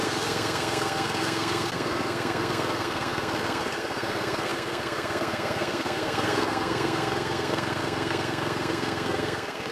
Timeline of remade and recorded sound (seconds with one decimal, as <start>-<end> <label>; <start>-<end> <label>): 0.0-9.7 remade